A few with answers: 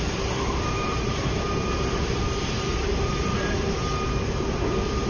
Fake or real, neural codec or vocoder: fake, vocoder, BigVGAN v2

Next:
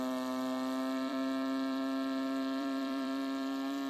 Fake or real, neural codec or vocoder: fake, vocoder, BigVGAN v2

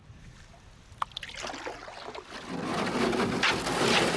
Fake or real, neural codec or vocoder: real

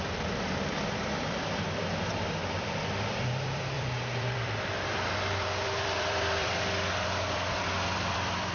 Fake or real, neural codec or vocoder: fake, vocoder, BigVGAN v2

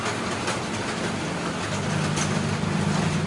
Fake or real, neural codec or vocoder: real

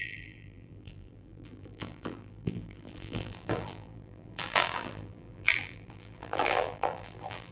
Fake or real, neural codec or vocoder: fake, vocoder, BigVGAN v2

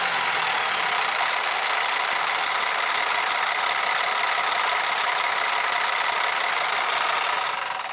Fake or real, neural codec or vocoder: real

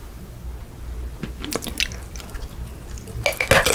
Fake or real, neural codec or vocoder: real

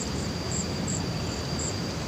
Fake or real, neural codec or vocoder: fake, vocoder, BigVGAN v2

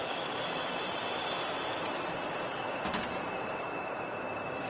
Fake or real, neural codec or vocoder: fake, vocoder, BigVGAN v2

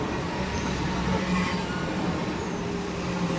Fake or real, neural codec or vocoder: real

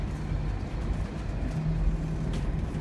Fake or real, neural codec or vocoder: real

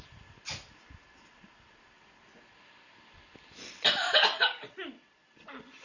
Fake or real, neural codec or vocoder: real